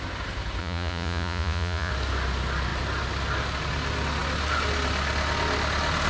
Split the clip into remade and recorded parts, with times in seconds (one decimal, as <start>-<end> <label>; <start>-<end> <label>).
0.0-0.6 recorded; 0.6-1.9 remade; 1.9-6.1 recorded